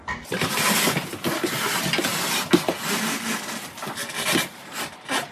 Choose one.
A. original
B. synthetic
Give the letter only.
A